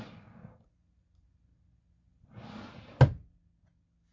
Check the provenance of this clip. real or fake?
real